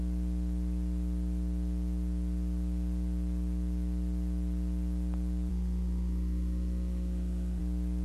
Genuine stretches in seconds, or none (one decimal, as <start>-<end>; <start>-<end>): 0.0-5.5; 7.6-8.0